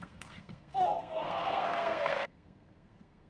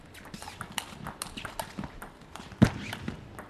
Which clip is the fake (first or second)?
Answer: first